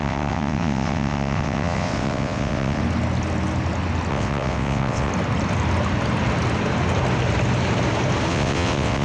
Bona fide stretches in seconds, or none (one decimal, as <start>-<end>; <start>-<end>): 2.8-4.1; 5.1-8.3